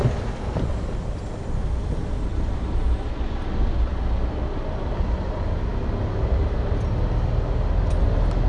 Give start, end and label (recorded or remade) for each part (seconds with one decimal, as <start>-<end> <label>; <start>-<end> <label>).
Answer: 0.0-8.5 recorded